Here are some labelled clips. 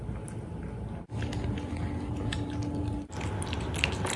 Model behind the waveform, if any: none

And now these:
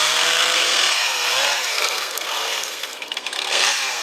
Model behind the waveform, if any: codec, SNAC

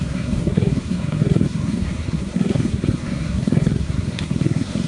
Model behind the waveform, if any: codec, SNAC